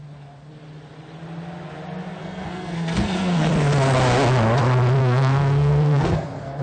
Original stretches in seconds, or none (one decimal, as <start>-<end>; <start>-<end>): 0.0-2.2; 3.5-5.0